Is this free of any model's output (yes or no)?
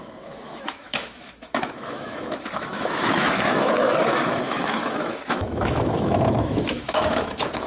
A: no